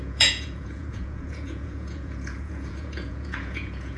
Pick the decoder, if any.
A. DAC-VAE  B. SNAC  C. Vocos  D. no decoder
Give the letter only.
C